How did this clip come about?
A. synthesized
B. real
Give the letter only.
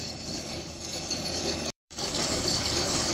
A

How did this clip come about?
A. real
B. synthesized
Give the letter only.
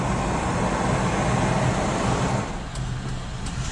A